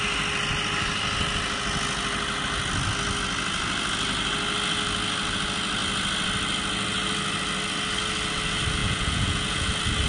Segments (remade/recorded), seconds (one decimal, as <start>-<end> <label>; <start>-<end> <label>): 0.0-8.8 recorded; 8.8-9.7 remade; 9.7-10.1 recorded